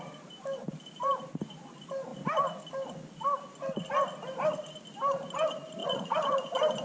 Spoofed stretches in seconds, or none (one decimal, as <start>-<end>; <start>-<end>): 5.8-6.3